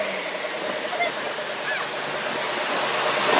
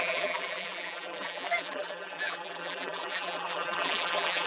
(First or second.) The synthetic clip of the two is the second